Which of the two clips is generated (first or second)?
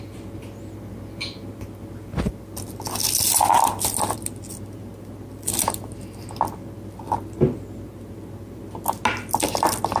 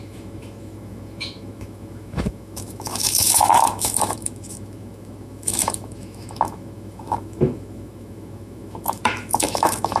second